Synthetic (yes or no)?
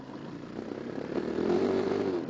no